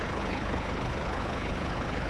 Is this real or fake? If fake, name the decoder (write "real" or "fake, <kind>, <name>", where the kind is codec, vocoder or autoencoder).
fake, codec, HILCodec